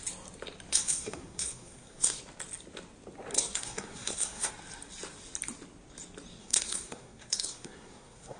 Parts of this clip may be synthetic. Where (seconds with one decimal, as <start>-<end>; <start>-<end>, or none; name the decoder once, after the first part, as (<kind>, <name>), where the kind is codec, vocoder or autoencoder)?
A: 0.7-2.2 (codec, SNAC); 3.3-4.5; 6.4-8.4